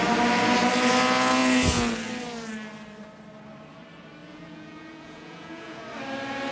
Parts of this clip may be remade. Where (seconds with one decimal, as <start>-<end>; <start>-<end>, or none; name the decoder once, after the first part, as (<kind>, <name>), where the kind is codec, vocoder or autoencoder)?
4.2-5.8 (vocoder, Vocos)